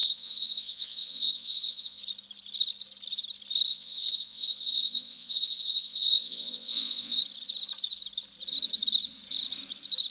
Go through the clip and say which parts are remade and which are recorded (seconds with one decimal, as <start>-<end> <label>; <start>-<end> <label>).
0.0-2.0 remade; 2.0-3.7 recorded; 3.7-7.2 remade; 7.2-10.1 recorded